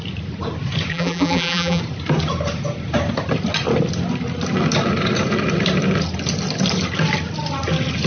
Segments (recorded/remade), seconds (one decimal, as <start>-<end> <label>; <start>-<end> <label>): 0.0-0.9 recorded; 0.9-1.8 remade; 1.8-8.1 recorded